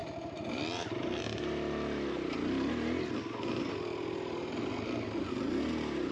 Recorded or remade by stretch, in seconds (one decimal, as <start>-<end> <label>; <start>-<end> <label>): 0.0-6.1 recorded